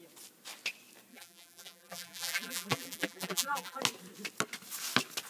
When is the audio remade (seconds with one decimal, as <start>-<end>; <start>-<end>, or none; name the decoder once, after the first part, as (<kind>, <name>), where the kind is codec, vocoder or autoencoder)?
1.1-3.8 (vocoder, BigVGAN v2)